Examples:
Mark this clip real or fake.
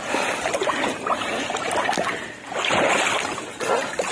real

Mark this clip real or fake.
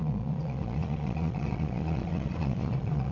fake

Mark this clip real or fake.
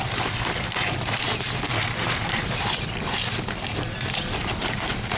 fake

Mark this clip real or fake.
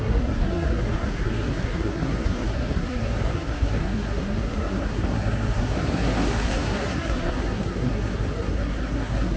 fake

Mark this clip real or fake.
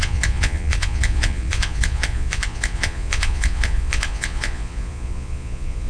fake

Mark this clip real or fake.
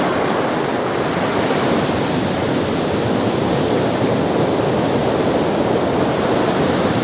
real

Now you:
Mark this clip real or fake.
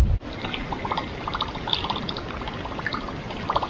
real